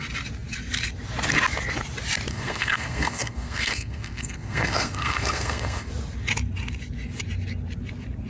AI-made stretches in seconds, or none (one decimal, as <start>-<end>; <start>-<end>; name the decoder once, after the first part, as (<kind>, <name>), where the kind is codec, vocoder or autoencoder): 2.3-5.9 (codec, SNAC)